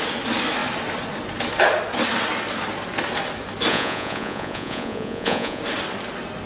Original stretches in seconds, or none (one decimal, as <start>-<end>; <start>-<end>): 0.0-3.7; 5.6-6.5